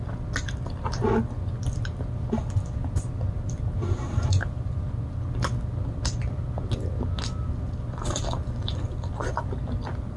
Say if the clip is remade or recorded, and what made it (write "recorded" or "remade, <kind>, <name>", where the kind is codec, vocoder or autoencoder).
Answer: recorded